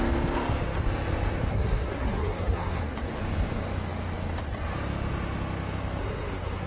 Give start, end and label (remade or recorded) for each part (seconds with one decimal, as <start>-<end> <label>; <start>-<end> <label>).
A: 0.0-1.5 recorded; 1.5-2.8 remade; 2.8-6.0 recorded; 6.0-6.7 remade